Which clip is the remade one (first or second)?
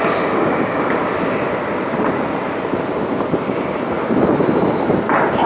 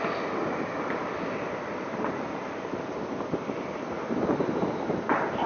second